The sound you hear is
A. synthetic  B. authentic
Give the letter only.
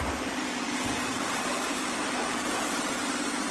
A